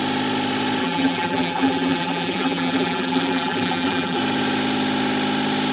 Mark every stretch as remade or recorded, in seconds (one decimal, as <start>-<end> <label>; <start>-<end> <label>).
0.0-0.8 recorded; 0.8-4.2 remade; 4.2-5.7 recorded